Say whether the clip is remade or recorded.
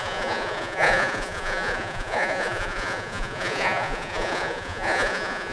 remade